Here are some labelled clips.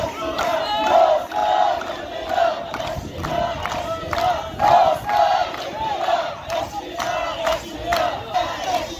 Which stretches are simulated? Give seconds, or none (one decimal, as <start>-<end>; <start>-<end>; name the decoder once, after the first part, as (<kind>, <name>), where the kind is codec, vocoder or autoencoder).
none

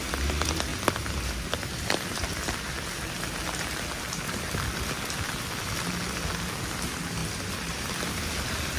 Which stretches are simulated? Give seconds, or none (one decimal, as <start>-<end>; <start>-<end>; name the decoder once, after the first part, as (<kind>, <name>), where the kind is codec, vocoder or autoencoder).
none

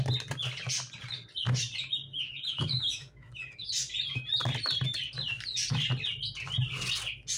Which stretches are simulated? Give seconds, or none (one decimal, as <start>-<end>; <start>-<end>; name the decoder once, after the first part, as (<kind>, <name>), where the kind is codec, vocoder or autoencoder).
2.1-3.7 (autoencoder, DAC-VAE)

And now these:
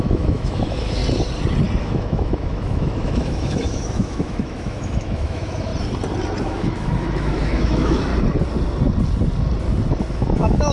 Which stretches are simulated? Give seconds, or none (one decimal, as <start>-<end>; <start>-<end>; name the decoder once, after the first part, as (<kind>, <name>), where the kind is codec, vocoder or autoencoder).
0.0-1.0 (autoencoder, DAC-VAE); 1.8-5.7; 6.4-8.1; 10.1-10.7

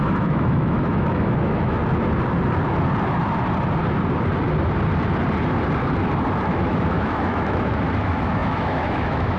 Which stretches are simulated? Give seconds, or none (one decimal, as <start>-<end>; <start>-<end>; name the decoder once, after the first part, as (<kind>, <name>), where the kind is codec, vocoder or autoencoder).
0.0-1.8 (autoencoder, DAC-VAE); 6.4-9.4

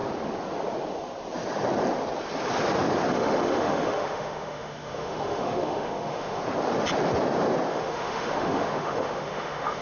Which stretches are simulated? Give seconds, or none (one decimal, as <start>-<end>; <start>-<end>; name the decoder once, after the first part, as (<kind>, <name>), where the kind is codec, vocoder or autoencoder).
3.1-6.4 (autoencoder, DAC-VAE); 7.7-9.8